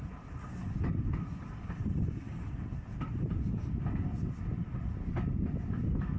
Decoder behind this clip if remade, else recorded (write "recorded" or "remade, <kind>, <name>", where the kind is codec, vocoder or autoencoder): recorded